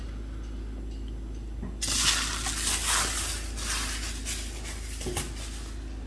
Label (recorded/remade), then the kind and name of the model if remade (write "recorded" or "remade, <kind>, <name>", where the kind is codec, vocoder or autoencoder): recorded